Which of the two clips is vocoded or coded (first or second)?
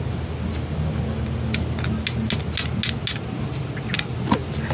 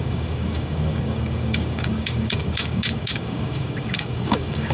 second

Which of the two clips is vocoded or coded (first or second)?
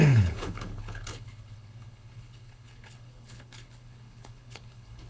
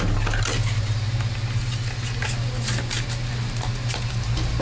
first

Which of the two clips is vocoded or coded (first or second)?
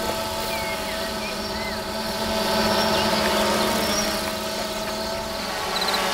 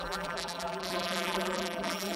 second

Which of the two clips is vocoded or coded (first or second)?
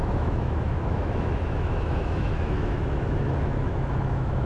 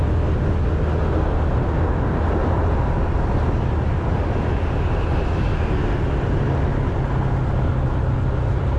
first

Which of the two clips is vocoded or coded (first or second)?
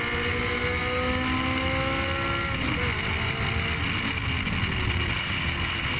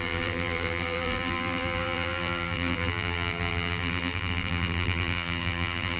second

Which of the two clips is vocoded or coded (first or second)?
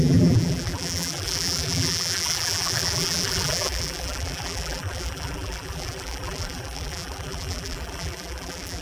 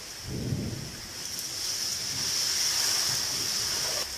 first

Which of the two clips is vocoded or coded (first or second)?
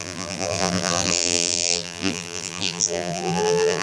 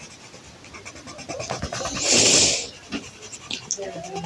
first